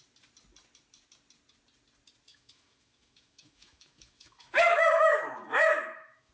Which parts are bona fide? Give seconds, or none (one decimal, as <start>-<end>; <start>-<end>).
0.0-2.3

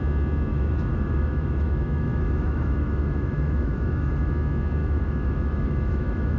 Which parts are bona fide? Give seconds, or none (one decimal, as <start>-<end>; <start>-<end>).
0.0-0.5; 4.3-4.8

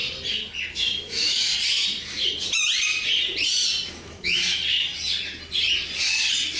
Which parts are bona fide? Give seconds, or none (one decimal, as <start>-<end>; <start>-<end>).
0.0-0.7; 1.5-3.9; 4.4-6.6